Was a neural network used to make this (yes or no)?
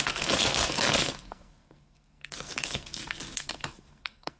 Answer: yes